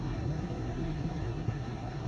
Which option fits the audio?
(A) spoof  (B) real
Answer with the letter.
A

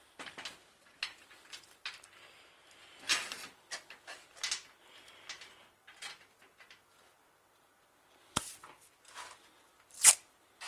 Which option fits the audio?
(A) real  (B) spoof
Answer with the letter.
A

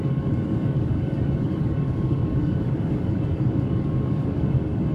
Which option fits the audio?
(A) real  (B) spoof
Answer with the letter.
B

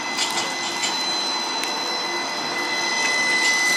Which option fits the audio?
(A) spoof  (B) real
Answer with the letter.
B